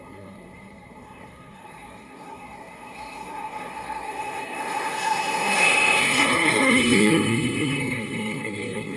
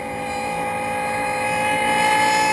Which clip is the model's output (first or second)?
first